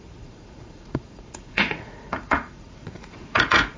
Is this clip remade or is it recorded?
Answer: remade